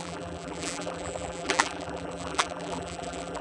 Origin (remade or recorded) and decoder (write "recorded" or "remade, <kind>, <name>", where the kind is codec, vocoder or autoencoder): remade, vocoder, BigVGAN v2